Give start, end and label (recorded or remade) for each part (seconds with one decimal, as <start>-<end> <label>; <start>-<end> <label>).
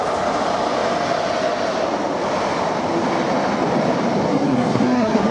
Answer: 0.0-4.3 recorded; 4.3-5.3 remade